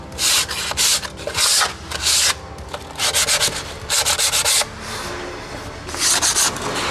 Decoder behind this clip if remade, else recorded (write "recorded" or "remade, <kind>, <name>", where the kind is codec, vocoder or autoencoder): recorded